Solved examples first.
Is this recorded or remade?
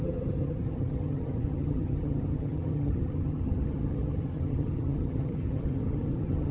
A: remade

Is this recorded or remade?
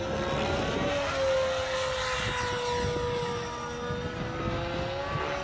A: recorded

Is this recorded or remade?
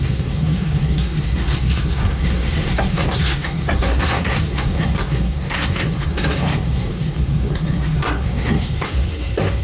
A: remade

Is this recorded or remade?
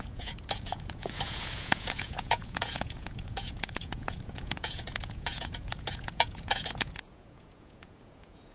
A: remade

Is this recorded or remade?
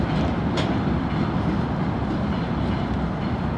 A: recorded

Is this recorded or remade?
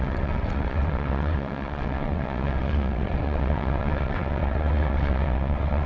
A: remade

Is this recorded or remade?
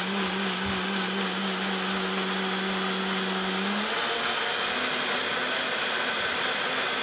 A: recorded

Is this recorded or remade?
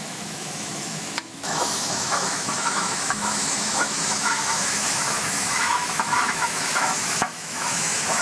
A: remade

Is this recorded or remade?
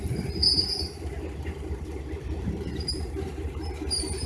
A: remade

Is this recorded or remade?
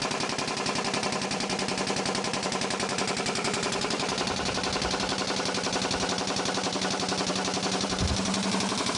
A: remade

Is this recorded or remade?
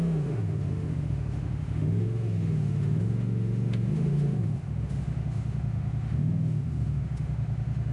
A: remade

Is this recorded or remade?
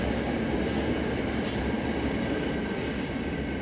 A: recorded